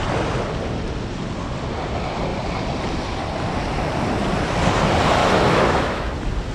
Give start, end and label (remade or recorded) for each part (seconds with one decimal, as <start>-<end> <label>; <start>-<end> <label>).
0.0-5.2 recorded; 5.2-6.1 remade; 6.1-6.5 recorded